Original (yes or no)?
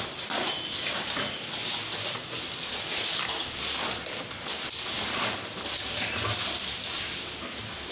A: yes